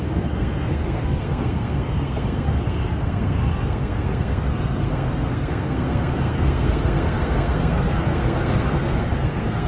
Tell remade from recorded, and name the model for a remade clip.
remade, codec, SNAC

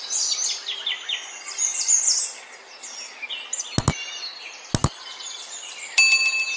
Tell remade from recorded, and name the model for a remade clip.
recorded